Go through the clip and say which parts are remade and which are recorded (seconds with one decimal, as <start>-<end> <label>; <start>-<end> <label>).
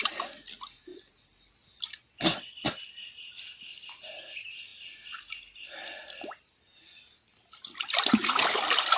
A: 0.0-9.0 recorded